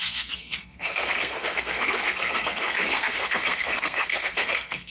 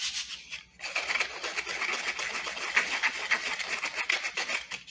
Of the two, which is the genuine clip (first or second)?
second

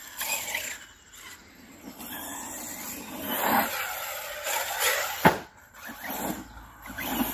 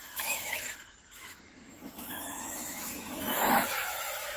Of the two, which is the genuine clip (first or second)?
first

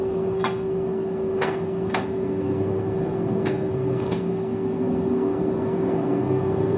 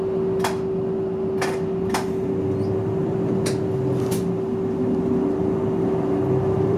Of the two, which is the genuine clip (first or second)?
second